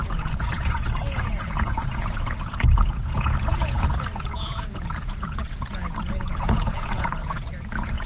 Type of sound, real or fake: fake